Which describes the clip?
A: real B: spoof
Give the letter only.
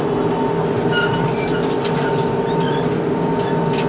A